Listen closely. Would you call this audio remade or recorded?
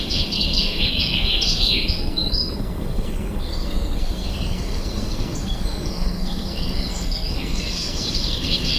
remade